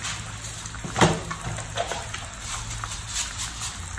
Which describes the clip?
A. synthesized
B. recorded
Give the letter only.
B